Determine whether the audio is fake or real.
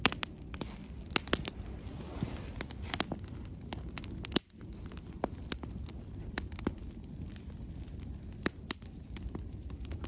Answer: real